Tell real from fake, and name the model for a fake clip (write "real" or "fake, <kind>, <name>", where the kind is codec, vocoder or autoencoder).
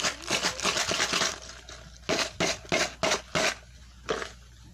real